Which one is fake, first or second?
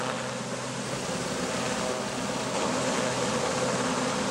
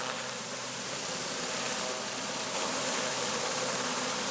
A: second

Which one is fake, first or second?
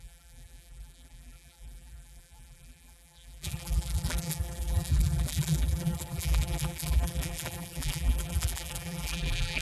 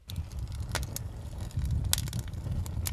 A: first